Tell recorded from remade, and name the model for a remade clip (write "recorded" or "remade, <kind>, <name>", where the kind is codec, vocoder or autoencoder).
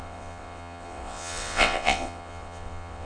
remade, vocoder, WaveNeXt